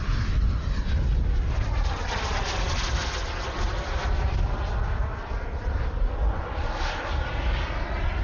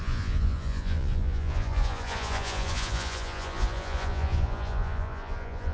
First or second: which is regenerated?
second